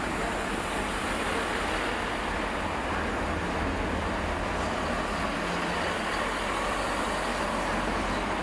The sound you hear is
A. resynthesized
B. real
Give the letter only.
B